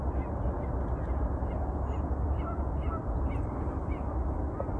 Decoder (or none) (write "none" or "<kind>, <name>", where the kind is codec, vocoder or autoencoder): none